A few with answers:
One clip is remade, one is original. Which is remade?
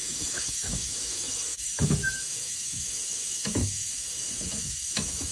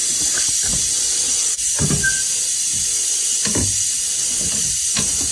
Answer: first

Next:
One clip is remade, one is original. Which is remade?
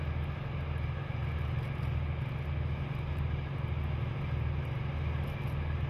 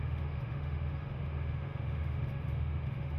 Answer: second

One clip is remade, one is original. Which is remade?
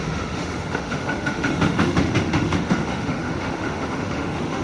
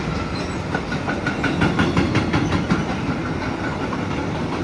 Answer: first